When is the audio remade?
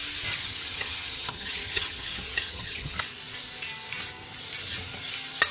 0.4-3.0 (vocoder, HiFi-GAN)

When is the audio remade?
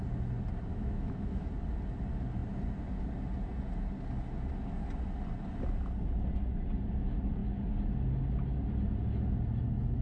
0.7-1.5 (autoencoder, DAC-VAE)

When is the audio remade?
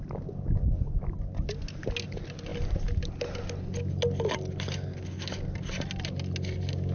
none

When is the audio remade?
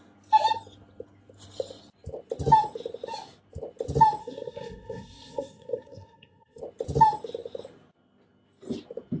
4.2-6.6 (codec, SNAC)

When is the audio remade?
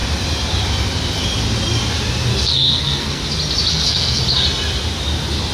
2.3-3.2 (codec, SNAC); 3.7-4.2